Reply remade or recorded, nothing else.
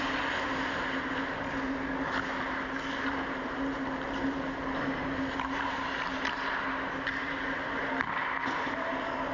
recorded